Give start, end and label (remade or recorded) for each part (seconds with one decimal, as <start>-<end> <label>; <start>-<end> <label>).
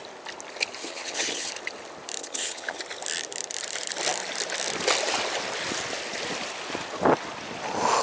0.0-0.8 recorded; 0.8-1.5 remade; 1.5-2.2 recorded; 2.2-2.8 remade; 2.8-8.0 recorded